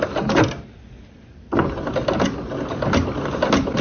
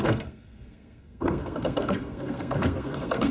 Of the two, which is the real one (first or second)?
first